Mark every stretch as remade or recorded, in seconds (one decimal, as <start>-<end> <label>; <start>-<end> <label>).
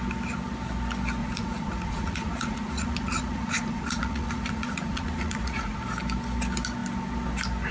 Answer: 0.0-1.2 recorded; 1.2-5.8 remade; 5.8-7.7 recorded